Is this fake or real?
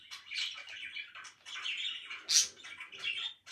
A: real